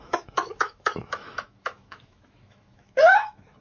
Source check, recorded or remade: remade